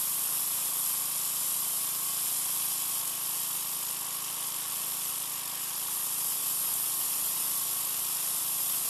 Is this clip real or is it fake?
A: real